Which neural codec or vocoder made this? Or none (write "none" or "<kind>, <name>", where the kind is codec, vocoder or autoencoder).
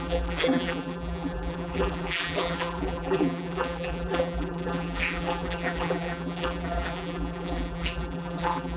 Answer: vocoder, BigVGAN v2